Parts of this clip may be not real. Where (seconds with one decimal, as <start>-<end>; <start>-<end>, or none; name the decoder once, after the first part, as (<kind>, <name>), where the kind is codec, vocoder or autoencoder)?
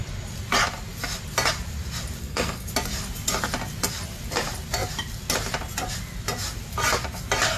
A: 2.2-2.7 (codec, SNAC)